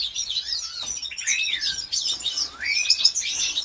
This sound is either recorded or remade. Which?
remade